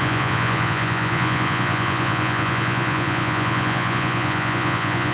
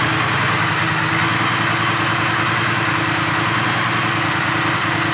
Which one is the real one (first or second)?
second